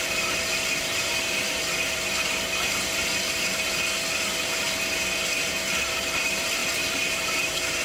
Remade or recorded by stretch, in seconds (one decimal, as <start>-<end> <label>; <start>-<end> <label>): 0.0-7.8 remade